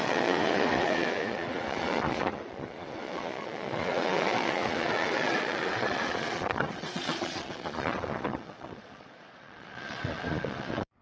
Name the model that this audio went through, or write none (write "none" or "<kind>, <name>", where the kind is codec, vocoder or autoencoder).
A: vocoder, Vocos